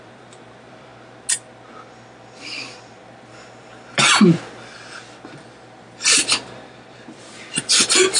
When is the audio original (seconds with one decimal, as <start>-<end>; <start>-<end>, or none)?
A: 0.9-2.4; 3.0-6.0